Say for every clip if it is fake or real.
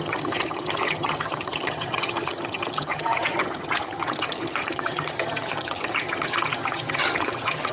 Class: fake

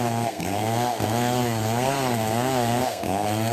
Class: fake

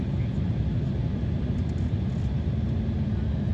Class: real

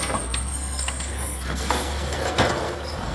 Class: fake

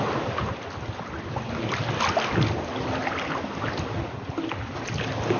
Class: real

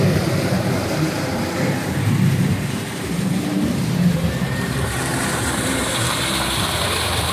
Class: fake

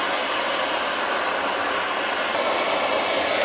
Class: real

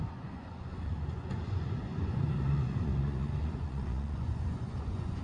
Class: fake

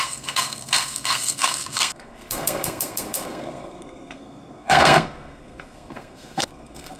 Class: fake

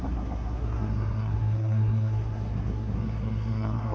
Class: fake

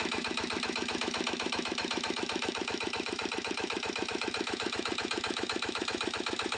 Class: fake